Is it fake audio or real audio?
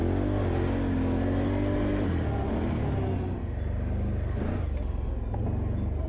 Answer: real